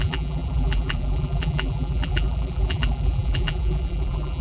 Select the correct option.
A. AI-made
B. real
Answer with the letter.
A